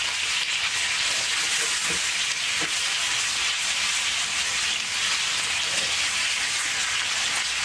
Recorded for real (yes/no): yes